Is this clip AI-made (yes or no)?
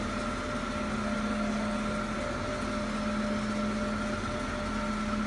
no